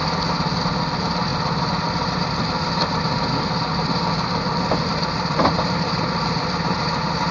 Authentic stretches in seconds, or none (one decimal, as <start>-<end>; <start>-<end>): 0.0-7.3